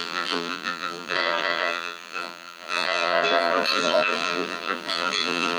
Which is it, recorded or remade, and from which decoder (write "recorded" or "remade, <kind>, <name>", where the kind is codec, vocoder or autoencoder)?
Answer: remade, vocoder, BigVGAN v2